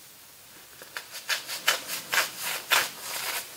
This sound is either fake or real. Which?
real